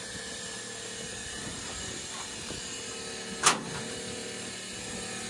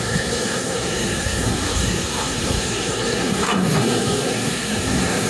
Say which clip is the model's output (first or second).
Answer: second